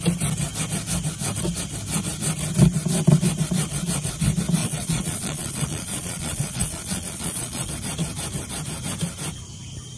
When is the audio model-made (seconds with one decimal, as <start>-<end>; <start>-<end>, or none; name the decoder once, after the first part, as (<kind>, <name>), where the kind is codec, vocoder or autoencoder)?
4.6-7.7 (vocoder, Vocos)